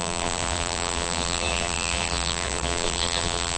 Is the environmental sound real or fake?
fake